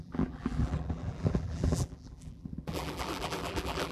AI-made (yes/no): yes